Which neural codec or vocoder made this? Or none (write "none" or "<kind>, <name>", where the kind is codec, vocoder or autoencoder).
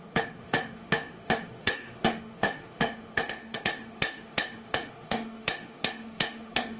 autoencoder, DAC-VAE